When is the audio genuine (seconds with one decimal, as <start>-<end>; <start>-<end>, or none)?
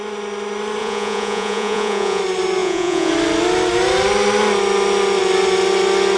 0.0-0.8; 2.2-2.6; 3.1-6.2